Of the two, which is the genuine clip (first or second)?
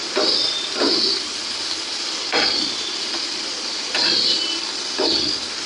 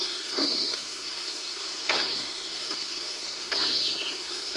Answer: first